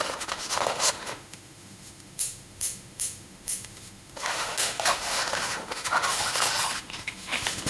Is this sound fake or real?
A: fake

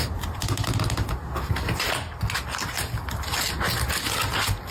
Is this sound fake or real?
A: real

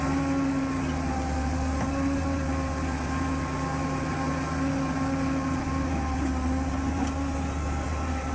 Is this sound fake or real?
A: real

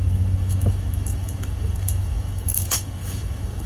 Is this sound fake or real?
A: fake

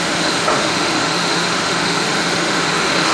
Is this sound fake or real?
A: fake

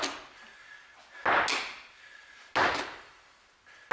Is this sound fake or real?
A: real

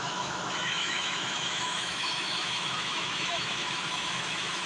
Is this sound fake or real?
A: fake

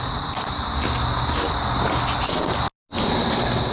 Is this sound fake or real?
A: real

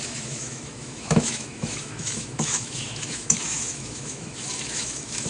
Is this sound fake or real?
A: fake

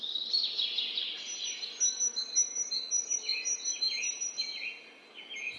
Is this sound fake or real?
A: real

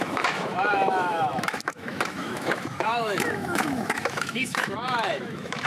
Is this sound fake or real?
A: fake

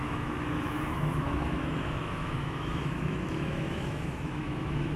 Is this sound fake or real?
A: fake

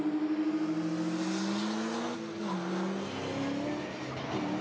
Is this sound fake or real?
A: real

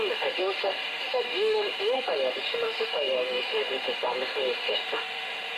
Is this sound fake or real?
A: fake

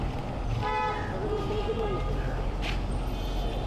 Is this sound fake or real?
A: real